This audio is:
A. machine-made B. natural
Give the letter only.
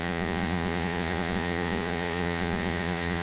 A